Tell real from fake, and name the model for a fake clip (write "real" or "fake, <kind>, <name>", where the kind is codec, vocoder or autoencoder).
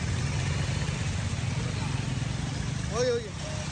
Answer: real